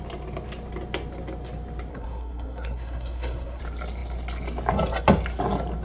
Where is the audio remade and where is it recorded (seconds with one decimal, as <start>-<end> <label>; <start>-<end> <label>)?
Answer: 0.0-1.9 recorded; 1.9-3.6 remade; 3.6-5.8 recorded